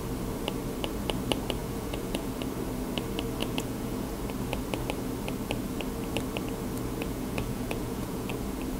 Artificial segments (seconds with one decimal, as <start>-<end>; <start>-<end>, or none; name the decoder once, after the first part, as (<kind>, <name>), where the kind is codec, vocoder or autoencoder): 1.6-2.3 (vocoder, Vocos); 3.4-4.1; 7.0-8.3